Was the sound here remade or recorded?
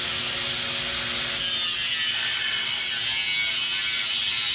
recorded